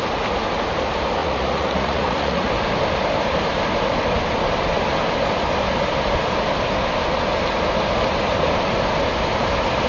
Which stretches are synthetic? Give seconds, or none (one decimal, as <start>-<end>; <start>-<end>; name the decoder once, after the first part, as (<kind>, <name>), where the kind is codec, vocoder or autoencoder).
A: 1.2-2.5 (vocoder, Vocos)